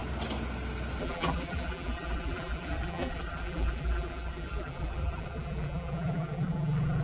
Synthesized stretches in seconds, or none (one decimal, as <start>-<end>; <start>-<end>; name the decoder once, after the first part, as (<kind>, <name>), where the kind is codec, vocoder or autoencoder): 1.0-7.0 (vocoder, BigVGAN v2)